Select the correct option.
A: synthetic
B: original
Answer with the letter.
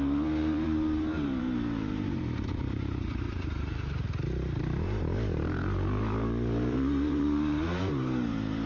A